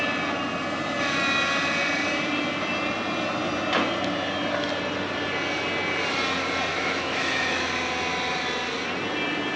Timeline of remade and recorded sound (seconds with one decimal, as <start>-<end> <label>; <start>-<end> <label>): 0.0-6.7 recorded; 6.7-7.7 remade; 7.7-9.6 recorded